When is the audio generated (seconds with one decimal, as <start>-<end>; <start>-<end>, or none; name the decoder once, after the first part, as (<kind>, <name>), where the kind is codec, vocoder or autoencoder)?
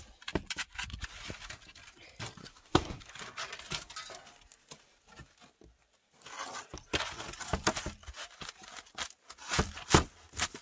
2.4-3.1 (codec, SNAC)